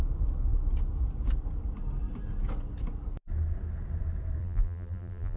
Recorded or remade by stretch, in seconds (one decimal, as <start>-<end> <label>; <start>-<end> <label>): 0.0-4.4 recorded; 4.4-5.4 remade

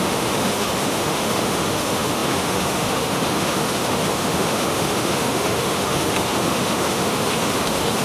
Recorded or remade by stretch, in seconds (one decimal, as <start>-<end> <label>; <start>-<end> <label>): 0.0-8.0 remade

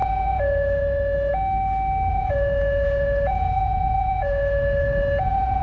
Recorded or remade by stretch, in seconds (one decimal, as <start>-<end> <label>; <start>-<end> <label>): 0.0-1.3 remade; 1.3-2.1 recorded; 2.1-5.6 remade

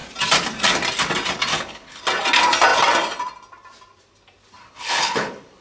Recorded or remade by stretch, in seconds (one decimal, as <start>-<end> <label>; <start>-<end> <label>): 0.0-1.5 recorded; 1.5-2.0 remade; 2.0-4.6 recorded; 4.6-5.6 remade

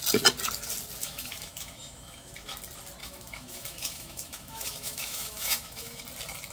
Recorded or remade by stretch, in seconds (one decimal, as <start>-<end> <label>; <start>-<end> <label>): 0.0-1.0 recorded; 1.0-2.6 remade; 2.6-3.0 recorded; 3.0-6.0 remade; 6.0-6.5 recorded

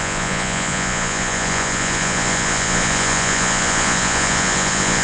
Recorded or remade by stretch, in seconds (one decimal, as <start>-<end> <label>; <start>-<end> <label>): 0.0-5.0 remade